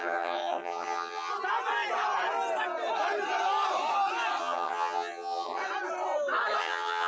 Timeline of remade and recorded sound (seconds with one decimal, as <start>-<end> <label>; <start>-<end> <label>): 0.0-1.3 remade; 1.3-4.4 recorded; 4.4-5.6 remade; 5.6-6.6 recorded; 6.6-7.1 remade